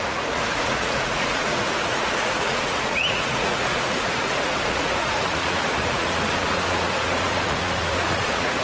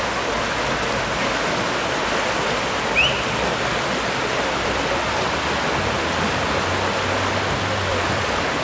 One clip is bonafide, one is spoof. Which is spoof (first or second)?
first